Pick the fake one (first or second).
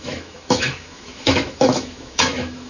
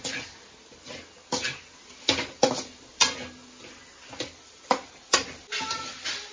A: first